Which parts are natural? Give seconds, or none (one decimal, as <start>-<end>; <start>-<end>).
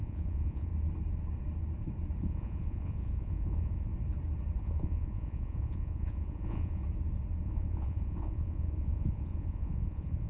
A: 0.7-2.2; 3.9-4.6; 6.8-7.4